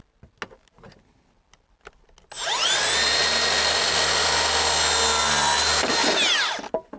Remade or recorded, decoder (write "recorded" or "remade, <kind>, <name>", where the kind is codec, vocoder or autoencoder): recorded